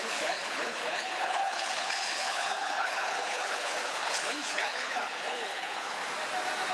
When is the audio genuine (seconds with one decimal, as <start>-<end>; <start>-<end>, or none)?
6.0-6.7